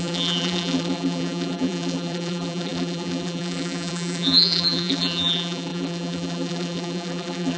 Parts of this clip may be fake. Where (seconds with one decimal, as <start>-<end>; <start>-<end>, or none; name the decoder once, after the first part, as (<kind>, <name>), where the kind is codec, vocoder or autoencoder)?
0.0-7.6 (vocoder, BigVGAN v2)